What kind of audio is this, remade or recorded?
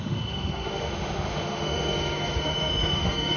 remade